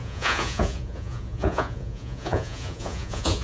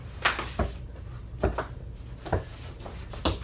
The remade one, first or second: first